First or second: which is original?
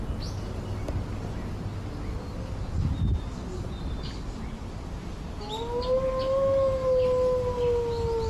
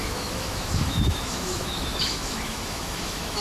first